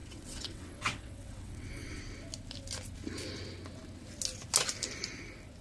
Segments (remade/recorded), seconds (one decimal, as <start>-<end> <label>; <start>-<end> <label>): 0.0-2.0 remade; 2.0-5.6 recorded